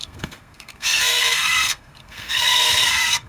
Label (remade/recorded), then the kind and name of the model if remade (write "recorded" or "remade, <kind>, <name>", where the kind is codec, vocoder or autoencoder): remade, codec, SNAC